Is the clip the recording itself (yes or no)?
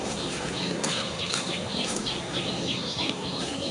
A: no